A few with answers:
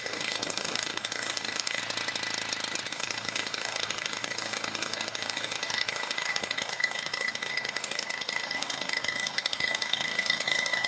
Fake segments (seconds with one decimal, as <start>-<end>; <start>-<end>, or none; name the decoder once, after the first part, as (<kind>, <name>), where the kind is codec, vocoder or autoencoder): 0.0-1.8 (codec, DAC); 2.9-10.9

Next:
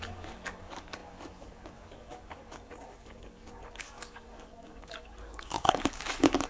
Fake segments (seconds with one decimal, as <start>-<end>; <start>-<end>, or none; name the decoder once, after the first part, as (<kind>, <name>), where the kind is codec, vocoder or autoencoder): 0.0-6.5 (codec, DAC)

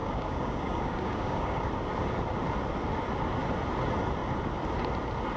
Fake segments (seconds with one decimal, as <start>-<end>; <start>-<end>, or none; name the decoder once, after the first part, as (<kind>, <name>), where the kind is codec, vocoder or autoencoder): 0.0-1.7 (codec, DAC)

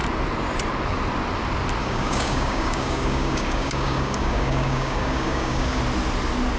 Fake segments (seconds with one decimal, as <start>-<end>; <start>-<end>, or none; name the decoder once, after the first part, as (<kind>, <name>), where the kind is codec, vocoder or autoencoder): 1.8-5.8 (codec, DAC)

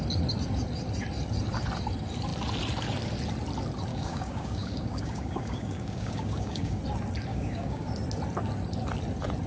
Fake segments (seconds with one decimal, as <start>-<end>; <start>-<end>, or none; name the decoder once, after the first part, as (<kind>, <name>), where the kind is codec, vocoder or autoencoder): 3.9-6.8 (codec, DAC); 7.3-7.9

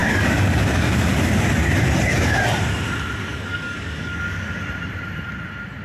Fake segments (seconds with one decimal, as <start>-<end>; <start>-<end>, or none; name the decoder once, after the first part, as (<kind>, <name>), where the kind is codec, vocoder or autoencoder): 0.0-1.4 (codec, DAC); 3.3-4.6

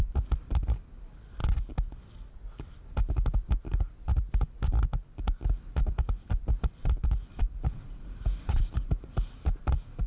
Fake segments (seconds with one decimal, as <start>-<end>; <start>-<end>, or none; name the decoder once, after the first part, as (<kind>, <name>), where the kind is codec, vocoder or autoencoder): none

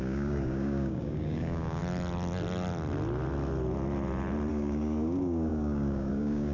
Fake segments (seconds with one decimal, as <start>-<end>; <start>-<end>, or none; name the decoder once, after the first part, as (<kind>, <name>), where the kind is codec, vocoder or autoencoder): 0.0-1.8 (codec, DAC); 4.5-6.5